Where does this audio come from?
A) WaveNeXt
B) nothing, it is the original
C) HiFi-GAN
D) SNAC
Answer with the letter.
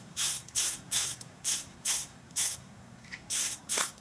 D